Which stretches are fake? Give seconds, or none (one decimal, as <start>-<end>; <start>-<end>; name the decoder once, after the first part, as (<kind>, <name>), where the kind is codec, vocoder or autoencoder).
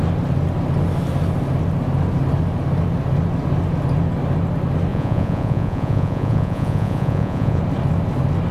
4.9-7.6 (vocoder, Vocos)